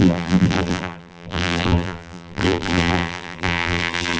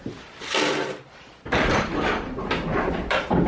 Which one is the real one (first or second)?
second